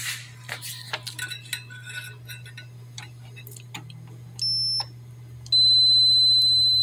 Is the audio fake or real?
real